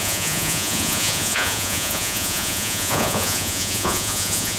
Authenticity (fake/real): fake